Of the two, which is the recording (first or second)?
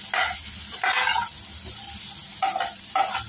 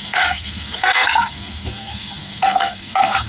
first